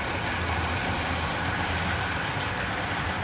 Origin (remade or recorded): recorded